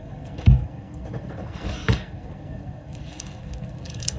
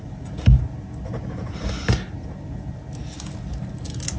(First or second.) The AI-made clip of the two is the first